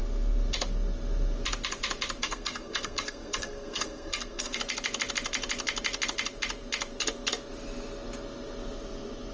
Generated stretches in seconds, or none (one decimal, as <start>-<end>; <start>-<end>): 2.2-4.6